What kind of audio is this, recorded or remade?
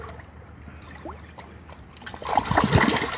recorded